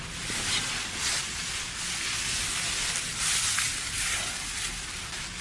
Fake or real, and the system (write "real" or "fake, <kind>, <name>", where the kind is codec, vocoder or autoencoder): real